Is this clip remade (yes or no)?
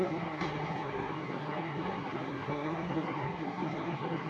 yes